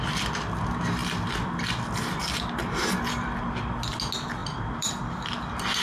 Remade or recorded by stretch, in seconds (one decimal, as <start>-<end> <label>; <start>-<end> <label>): 0.0-4.4 recorded; 4.4-4.9 remade; 4.9-5.8 recorded